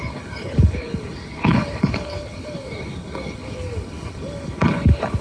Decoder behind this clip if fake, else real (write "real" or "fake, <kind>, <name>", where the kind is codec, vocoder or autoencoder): fake, codec, HILCodec